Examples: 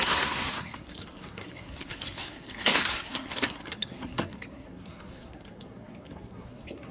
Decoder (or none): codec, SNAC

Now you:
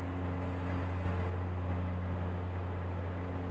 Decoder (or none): none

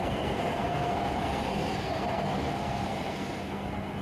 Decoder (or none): codec, SNAC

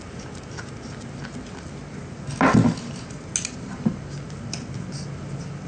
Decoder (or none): none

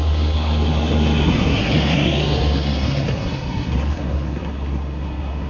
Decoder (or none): codec, SNAC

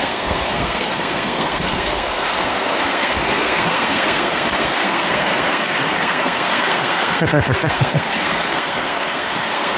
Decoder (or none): codec, SNAC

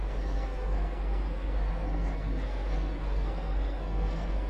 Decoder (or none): codec, SNAC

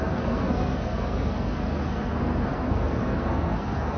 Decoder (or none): codec, SNAC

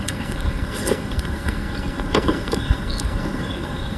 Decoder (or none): codec, SNAC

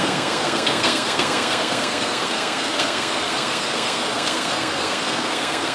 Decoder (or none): codec, SNAC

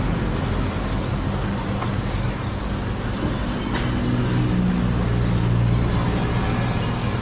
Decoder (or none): none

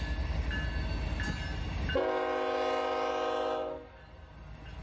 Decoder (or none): none